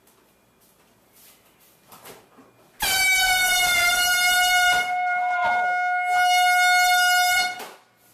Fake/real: real